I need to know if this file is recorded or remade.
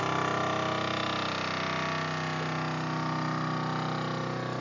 recorded